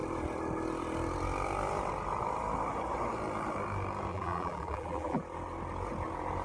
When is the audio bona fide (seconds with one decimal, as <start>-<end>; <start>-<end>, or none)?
0.0-4.1; 5.2-6.4